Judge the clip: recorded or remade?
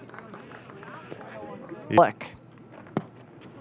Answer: recorded